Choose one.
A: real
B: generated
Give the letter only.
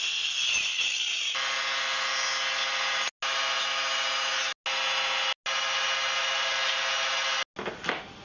A